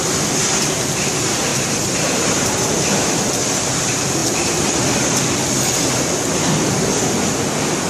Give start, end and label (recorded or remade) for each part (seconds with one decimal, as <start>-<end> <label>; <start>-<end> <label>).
0.0-1.5 recorded; 1.5-2.6 remade; 2.6-7.9 recorded

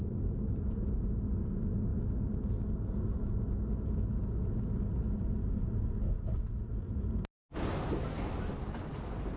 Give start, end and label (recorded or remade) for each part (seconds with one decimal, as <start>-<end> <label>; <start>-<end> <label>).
0.0-9.4 recorded

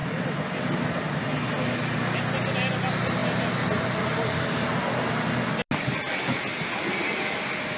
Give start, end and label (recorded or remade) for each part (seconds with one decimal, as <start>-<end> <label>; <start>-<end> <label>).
0.0-1.1 remade; 1.1-7.8 recorded